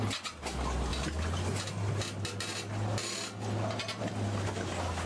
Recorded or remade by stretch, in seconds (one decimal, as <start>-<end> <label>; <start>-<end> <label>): 0.0-5.1 recorded